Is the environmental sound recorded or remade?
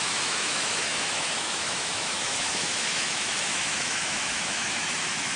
remade